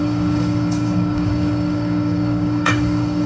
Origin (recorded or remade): remade